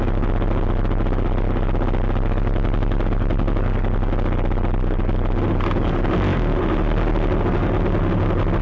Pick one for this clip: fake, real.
real